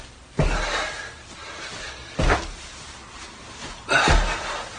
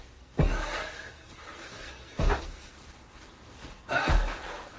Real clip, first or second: first